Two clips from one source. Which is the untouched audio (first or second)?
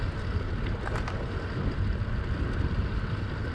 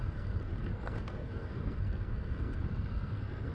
first